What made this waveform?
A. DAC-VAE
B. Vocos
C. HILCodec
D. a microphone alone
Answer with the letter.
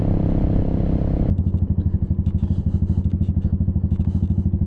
D